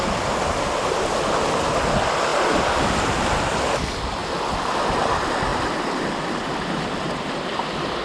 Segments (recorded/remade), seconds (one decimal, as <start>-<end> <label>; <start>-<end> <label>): 0.0-8.0 recorded